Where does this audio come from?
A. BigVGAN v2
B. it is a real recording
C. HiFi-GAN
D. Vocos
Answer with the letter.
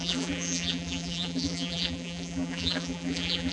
A